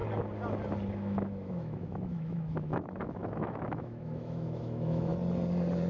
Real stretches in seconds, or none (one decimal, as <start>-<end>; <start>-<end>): 0.0-0.9; 5.1-5.9